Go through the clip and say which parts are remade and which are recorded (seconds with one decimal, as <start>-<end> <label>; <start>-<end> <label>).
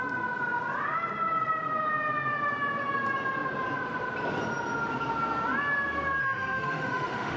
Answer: 0.0-6.2 recorded; 6.2-7.4 remade